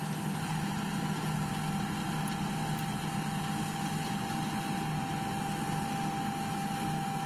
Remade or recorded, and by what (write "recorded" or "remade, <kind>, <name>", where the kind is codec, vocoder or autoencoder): recorded